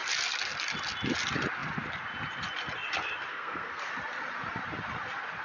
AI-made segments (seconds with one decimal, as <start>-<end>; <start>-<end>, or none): 3.3-3.9